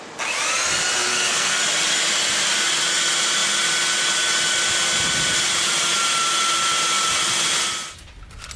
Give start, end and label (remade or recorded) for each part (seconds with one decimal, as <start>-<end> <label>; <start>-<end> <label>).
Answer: 0.0-1.1 recorded; 1.1-1.6 remade; 1.6-8.6 recorded